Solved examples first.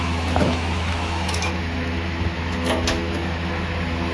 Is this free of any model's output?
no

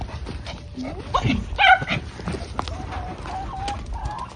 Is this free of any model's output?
yes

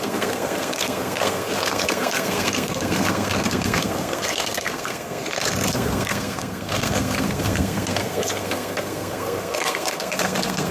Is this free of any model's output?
no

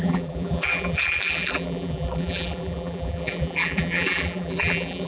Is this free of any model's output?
no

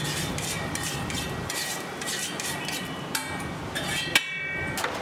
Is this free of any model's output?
no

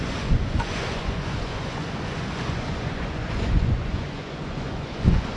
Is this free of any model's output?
no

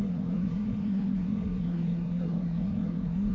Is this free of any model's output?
no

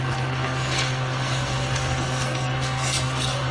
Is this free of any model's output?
no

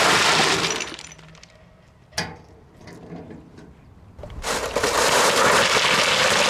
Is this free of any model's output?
yes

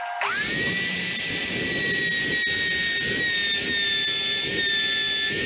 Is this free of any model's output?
yes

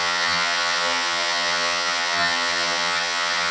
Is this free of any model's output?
no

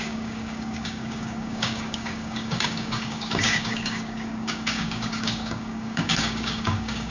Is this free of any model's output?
no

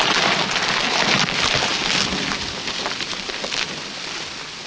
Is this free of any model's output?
yes